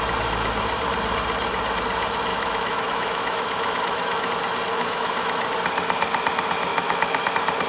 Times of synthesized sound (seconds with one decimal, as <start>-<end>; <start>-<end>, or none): 2.3-4.3; 4.7-5.5; 6.7-7.3